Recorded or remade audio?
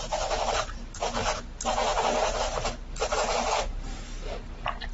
recorded